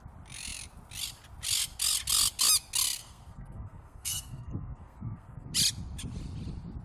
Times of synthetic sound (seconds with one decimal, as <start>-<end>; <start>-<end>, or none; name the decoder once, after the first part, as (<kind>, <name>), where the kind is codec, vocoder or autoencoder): 3.0-5.5 (codec, SNAC)